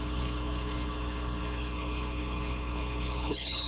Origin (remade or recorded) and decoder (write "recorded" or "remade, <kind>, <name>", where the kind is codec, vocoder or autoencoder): remade, codec, HILCodec